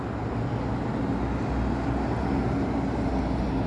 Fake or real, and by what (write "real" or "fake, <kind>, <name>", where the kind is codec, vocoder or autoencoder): real